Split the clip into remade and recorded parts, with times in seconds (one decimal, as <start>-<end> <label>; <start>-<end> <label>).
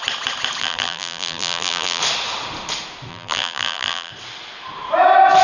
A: 0.0-0.6 recorded; 0.6-2.0 remade; 2.0-3.1 recorded; 3.1-4.1 remade; 4.1-5.4 recorded